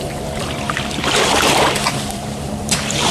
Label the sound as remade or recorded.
remade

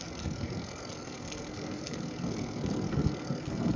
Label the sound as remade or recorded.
remade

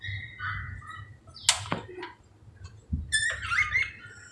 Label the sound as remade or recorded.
recorded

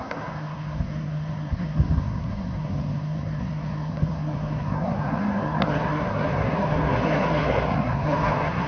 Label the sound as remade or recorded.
remade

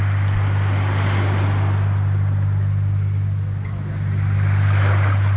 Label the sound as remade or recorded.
recorded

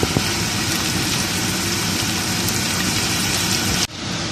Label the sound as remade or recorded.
recorded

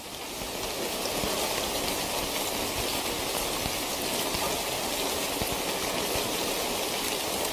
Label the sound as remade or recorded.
recorded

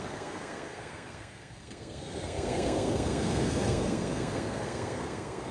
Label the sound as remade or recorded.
remade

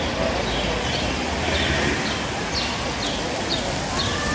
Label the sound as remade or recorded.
recorded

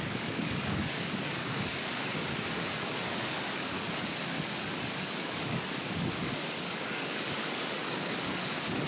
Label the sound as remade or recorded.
remade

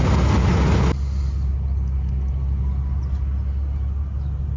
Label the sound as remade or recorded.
recorded